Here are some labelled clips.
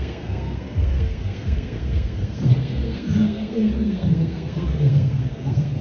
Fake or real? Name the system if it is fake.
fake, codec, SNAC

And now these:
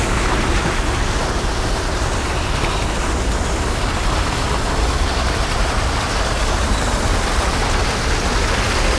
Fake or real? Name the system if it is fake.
real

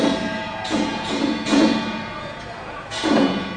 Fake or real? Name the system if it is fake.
fake, vocoder, Vocos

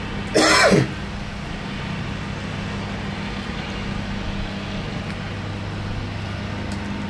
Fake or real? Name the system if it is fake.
real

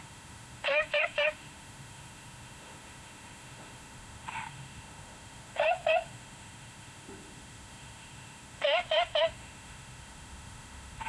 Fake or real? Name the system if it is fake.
fake, autoencoder, DAC-VAE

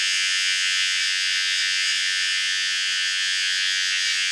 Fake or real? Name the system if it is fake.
fake, vocoder, Vocos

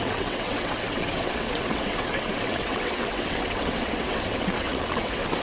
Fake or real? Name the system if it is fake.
fake, vocoder, WaveNeXt